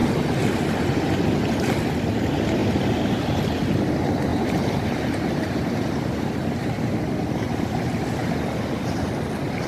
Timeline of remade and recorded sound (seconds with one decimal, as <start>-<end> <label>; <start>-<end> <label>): 0.0-2.6 recorded; 2.6-3.6 remade; 3.6-4.3 recorded; 4.3-6.1 remade; 6.1-9.7 recorded